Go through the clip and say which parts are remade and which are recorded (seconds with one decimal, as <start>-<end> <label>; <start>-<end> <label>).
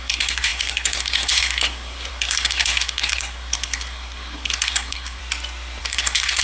0.0-5.2 remade; 5.2-5.8 recorded; 5.8-6.4 remade